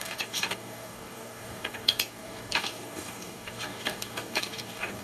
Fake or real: fake